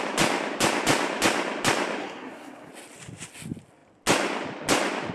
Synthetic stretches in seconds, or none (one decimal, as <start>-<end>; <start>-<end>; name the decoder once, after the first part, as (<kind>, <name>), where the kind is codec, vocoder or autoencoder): 2.0-2.7 (codec, SNAC)